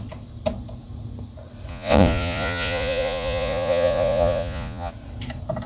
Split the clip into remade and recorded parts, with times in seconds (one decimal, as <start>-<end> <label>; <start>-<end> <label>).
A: 0.0-1.7 recorded; 1.7-4.9 remade; 4.9-5.7 recorded